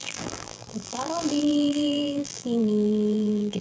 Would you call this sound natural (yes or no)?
no